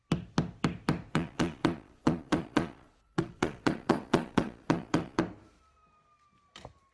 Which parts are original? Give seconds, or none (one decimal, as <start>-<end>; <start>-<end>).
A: 0.0-1.1; 5.2-6.9